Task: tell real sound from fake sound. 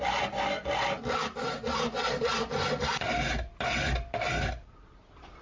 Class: real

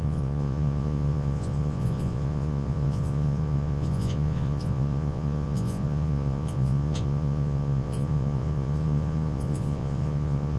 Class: fake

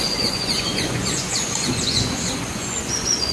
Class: fake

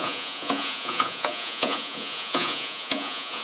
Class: fake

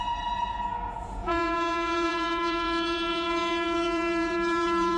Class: fake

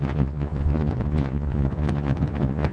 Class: fake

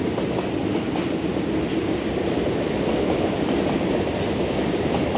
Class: real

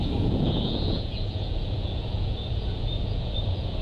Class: fake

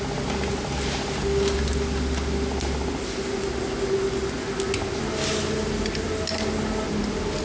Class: real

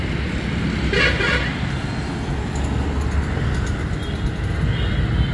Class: real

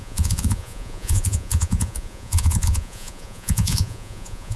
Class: fake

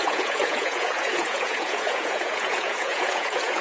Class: fake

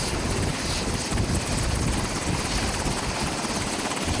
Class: real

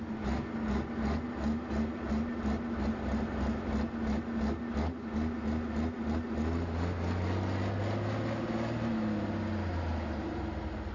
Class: real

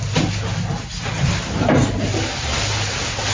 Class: real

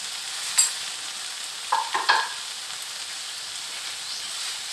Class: real